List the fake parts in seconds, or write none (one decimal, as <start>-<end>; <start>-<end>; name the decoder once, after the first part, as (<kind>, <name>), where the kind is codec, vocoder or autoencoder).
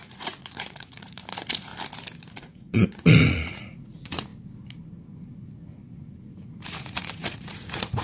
0.0-1.7 (vocoder, Vocos); 2.4-4.3; 6.7-8.0